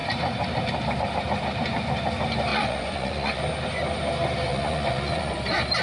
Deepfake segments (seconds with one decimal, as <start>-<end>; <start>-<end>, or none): 2.5-3.4; 4.5-5.3